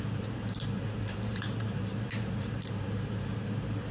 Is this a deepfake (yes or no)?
yes